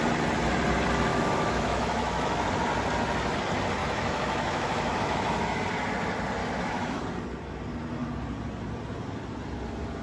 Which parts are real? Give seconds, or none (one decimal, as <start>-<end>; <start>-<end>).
0.0-1.1; 2.4-3.8; 5.6-6.4; 7.0-10.0